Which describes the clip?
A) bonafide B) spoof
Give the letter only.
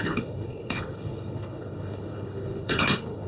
B